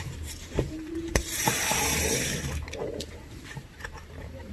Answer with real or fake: fake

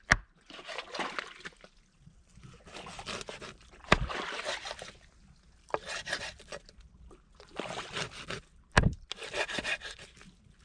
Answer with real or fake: real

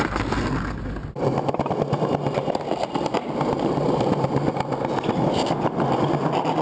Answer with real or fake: real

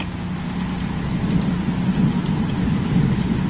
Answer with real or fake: real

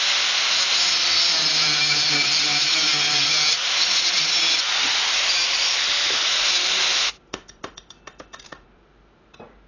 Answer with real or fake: real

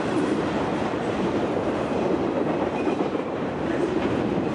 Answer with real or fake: fake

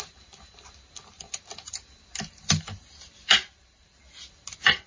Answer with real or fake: real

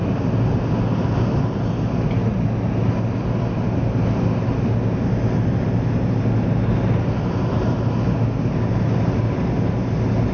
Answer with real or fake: real